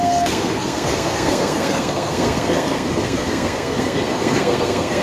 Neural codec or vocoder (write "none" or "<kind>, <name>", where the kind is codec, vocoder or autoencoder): codec, SNAC